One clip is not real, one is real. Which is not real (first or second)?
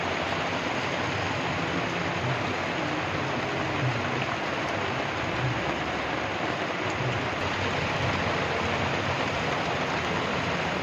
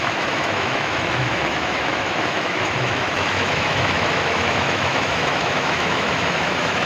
second